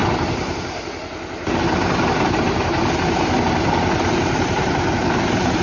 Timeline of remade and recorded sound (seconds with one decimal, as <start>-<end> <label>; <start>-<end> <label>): 0.0-5.6 recorded